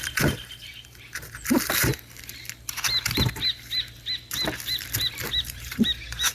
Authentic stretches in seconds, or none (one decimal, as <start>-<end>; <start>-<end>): 1.9-5.3